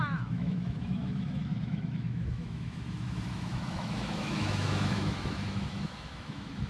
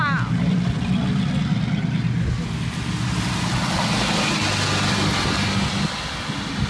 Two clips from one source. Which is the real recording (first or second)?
second